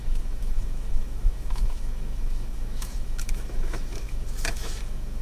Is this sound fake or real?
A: fake